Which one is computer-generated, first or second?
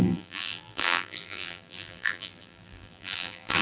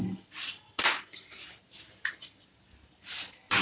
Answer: first